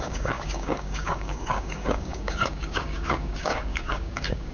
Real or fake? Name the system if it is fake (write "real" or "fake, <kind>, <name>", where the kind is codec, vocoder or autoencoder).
fake, codec, DAC